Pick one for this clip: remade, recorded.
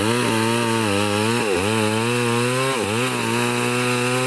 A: recorded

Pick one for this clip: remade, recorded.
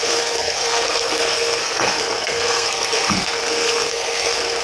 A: remade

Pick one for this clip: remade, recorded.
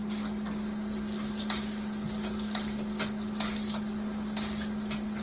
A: recorded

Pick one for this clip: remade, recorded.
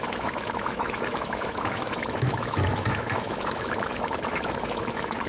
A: remade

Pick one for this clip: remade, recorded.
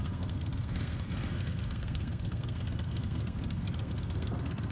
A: remade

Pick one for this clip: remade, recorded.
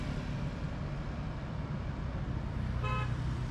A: recorded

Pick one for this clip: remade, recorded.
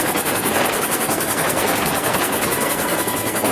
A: remade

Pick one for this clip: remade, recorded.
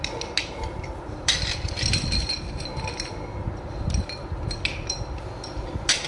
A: recorded